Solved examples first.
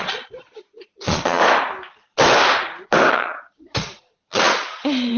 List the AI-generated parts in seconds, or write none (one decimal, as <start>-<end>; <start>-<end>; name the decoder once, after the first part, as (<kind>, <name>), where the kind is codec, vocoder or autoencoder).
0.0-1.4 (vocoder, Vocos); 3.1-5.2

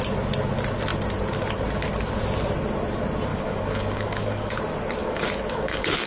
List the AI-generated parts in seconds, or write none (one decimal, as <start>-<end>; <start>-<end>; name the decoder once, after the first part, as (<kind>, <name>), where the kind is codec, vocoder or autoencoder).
3.3-4.6 (codec, DAC); 5.0-6.1

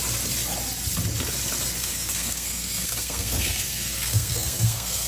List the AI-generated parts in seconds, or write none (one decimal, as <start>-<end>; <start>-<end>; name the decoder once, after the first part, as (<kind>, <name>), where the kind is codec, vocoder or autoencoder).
1.8-5.1 (codec, SNAC)